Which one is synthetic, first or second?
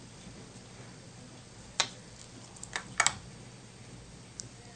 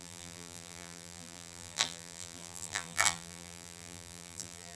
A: second